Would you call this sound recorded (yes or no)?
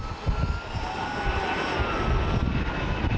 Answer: yes